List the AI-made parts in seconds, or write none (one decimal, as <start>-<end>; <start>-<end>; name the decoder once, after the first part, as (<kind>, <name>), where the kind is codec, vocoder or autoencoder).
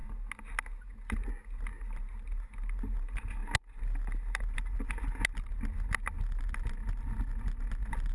none